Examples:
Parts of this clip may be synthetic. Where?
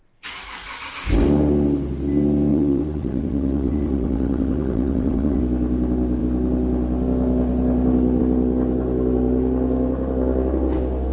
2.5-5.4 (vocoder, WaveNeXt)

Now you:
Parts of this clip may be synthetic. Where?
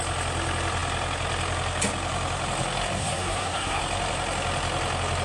3.0-3.8 (codec, SNAC)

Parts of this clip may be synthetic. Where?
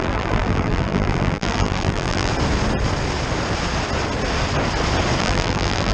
0.0-2.3 (vocoder, BigVGAN v2); 5.2-5.9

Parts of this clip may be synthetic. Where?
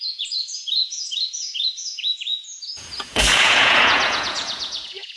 0.0-5.2 (vocoder, Vocos)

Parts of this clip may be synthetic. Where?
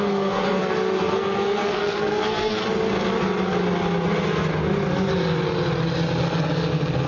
0.0-2.6 (codec, SNAC)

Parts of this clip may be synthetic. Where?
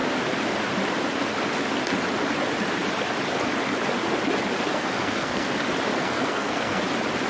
4.7-5.5 (codec, SNAC); 6.0-6.8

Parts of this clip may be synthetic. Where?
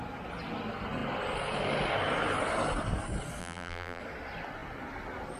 3.4-4.0 (vocoder, BigVGAN v2)